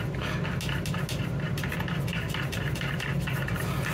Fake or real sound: real